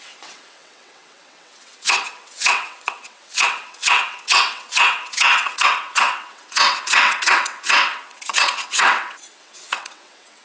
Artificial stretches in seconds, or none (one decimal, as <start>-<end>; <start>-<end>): 0.0-10.4

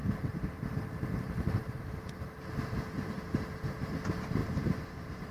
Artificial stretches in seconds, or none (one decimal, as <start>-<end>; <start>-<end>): 0.0-0.6; 1.6-2.4; 4.4-5.3

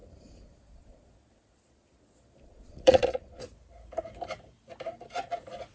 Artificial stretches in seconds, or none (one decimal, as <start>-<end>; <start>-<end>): 0.0-3.4

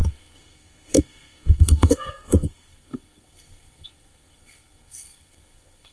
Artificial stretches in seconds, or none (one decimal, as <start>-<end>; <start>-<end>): 0.0-5.9

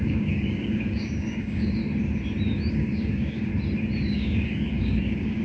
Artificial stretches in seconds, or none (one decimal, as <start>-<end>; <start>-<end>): 0.0-1.8; 2.7-3.5; 4.1-5.4